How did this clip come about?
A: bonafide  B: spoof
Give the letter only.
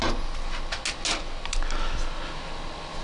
A